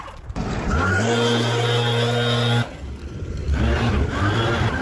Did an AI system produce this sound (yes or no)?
no